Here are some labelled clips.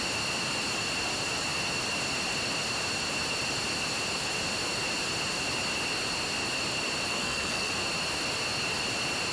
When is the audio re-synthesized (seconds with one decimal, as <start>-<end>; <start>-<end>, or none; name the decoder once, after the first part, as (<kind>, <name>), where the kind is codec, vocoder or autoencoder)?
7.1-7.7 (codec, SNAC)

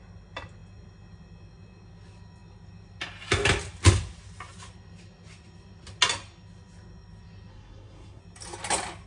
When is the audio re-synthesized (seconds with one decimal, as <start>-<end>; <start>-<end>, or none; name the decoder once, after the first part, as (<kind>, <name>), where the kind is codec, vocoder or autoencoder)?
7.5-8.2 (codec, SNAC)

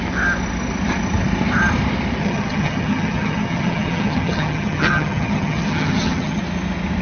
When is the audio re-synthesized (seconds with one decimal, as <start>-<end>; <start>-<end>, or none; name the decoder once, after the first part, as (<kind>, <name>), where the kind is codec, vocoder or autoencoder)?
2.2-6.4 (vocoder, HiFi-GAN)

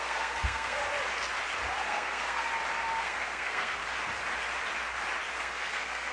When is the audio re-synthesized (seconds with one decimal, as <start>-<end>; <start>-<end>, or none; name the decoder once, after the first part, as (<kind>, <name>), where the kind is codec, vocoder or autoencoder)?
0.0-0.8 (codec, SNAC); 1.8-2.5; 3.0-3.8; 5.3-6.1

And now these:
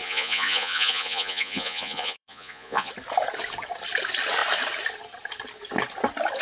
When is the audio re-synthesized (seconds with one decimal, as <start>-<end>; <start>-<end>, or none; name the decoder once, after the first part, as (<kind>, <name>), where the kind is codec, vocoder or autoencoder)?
0.0-2.9 (vocoder, Vocos)